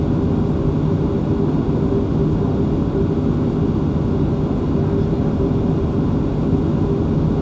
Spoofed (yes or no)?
no